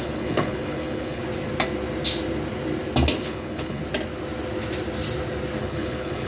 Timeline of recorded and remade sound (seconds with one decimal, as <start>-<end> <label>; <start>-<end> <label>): 0.0-1.2 remade; 1.2-3.2 recorded; 3.2-3.8 remade; 3.8-5.6 recorded; 5.6-6.3 remade